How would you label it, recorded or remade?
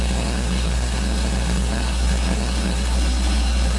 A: remade